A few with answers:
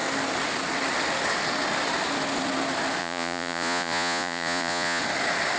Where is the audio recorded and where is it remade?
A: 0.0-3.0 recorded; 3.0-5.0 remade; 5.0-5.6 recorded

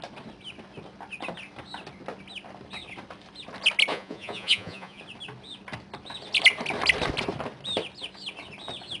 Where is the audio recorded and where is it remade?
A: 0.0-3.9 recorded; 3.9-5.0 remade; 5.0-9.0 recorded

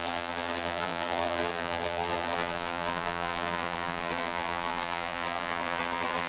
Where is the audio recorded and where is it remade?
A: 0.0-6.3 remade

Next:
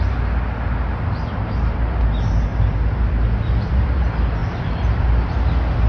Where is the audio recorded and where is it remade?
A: 0.0-1.4 recorded; 1.4-2.0 remade; 2.0-4.4 recorded; 4.4-5.3 remade; 5.3-5.9 recorded

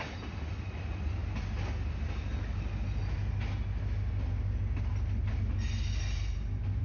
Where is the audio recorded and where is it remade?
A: 0.0-6.8 recorded